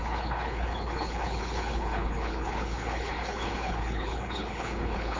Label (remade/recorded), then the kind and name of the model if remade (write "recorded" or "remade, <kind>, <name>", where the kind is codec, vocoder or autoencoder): remade, codec, HILCodec